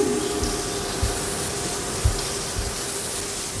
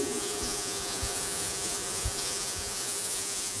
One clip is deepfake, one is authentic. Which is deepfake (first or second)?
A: second